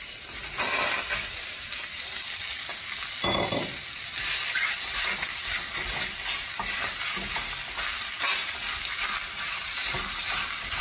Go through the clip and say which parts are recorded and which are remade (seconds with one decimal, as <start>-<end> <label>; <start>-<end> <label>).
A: 0.0-10.8 recorded